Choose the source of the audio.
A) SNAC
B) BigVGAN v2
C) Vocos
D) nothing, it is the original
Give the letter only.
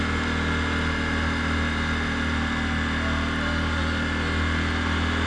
D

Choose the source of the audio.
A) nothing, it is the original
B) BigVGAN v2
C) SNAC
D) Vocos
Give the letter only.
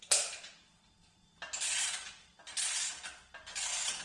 A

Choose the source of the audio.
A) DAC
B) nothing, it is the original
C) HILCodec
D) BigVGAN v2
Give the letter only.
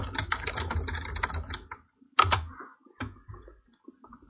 B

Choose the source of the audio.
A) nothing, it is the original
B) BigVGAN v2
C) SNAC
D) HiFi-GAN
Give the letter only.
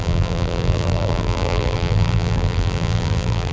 B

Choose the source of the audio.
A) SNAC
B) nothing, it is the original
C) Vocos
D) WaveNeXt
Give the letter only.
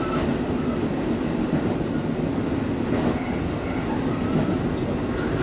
B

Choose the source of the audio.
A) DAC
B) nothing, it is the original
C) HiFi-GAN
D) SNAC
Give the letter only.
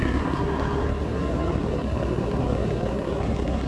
D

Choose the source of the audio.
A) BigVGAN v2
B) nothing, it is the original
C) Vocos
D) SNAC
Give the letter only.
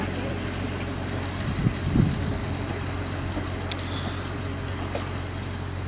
B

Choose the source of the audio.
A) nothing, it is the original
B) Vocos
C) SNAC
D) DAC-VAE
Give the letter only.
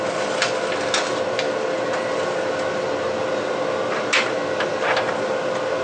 A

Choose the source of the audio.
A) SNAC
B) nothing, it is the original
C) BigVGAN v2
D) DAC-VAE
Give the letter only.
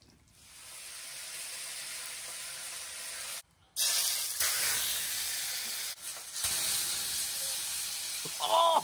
B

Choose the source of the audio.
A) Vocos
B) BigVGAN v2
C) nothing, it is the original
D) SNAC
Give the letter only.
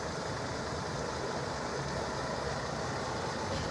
C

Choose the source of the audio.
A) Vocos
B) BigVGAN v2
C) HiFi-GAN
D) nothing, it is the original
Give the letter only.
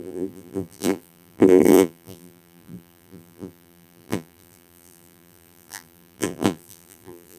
B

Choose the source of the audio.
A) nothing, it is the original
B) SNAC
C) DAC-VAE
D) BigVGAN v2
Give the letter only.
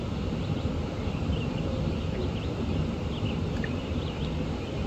D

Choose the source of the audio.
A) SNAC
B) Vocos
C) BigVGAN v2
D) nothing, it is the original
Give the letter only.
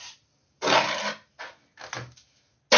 D